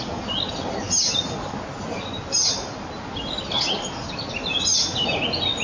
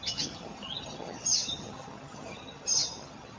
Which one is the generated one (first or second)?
second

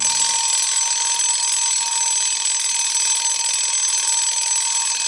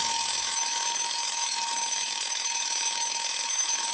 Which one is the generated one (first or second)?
second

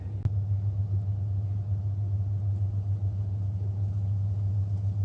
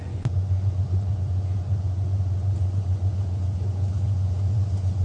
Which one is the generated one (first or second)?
second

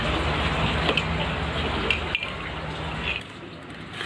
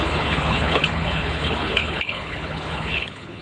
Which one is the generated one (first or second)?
second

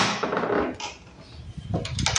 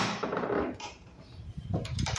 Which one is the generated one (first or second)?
second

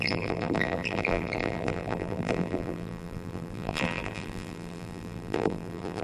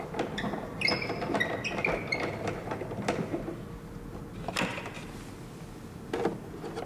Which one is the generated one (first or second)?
first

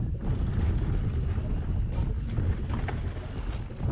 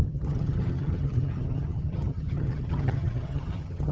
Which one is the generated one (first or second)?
second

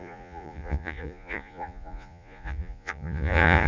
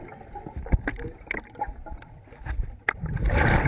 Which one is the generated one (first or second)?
first